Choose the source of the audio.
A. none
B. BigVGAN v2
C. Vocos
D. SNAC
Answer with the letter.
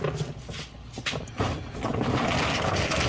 A